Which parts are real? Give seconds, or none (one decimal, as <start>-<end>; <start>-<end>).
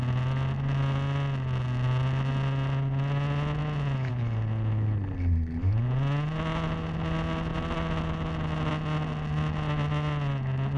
0.0-10.8